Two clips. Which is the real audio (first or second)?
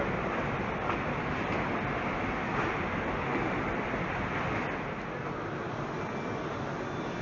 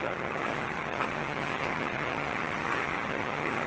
first